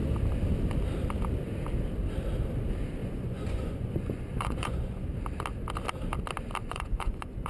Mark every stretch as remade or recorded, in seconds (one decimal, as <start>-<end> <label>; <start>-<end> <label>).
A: 0.0-3.0 recorded; 3.0-5.1 remade; 5.1-6.6 recorded; 6.6-7.5 remade